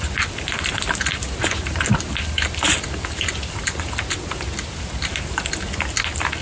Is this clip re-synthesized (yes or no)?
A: no